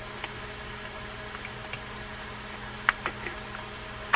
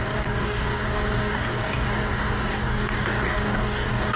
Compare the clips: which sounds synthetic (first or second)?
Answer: second